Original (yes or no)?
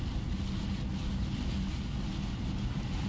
yes